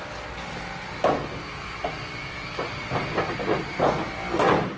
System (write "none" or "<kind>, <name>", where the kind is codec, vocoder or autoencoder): none